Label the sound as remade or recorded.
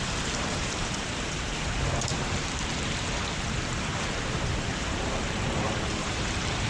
remade